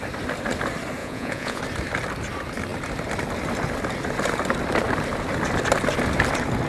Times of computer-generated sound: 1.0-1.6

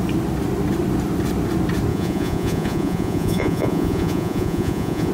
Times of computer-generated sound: 1.9-5.1